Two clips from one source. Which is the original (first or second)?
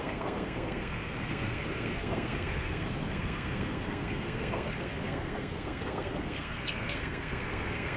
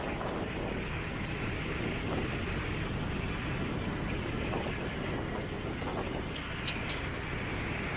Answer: second